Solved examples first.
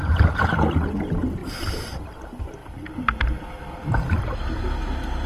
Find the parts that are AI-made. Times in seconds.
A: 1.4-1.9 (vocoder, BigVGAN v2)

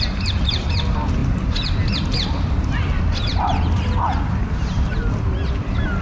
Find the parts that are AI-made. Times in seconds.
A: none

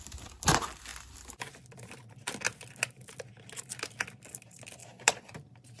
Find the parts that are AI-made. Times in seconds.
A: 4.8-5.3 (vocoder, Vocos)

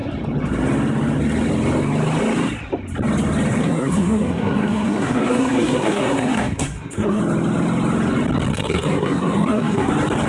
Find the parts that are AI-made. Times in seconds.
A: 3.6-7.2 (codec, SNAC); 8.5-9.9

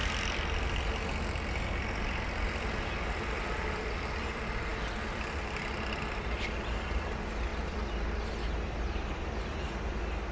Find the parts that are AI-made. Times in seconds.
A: none